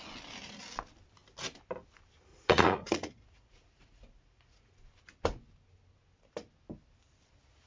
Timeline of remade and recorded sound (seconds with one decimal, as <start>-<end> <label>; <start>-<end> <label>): 0.0-2.3 recorded; 2.3-4.7 remade; 4.7-7.7 recorded